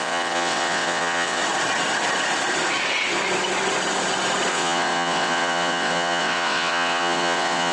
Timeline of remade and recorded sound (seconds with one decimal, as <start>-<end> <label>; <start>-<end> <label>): 0.0-1.4 remade; 1.4-4.5 recorded; 4.5-7.7 remade